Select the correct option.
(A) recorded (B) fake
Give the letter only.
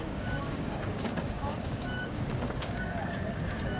B